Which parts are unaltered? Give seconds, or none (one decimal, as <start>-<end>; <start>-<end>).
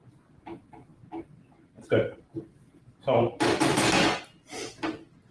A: 0.0-5.3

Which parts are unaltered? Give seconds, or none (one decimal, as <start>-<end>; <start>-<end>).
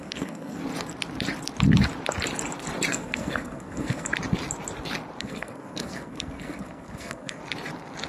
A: 0.6-2.9; 4.1-5.2; 7.4-8.1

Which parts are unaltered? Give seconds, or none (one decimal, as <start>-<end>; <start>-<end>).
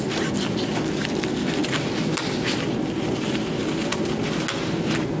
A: 0.0-5.2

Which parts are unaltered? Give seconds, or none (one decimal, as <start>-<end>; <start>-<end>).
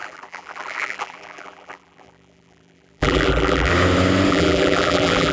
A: 3.7-4.3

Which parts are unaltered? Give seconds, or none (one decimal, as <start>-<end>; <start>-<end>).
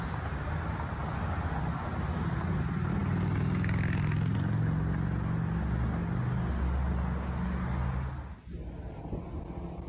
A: 0.0-9.9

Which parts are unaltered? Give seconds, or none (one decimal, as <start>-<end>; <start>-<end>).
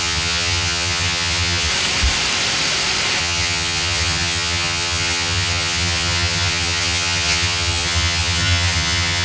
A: 1.7-3.2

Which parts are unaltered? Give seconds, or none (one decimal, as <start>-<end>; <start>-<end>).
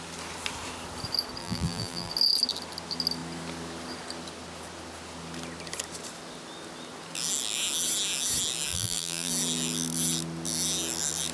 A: 0.0-1.4; 2.1-8.7; 9.3-11.3